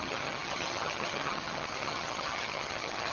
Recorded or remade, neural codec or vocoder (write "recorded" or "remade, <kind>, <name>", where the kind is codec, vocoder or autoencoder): remade, vocoder, HiFi-GAN